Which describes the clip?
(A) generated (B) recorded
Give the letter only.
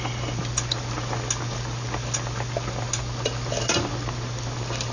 B